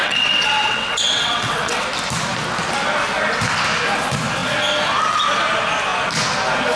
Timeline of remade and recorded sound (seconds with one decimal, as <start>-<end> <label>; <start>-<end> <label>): 0.0-1.8 remade; 1.8-6.8 recorded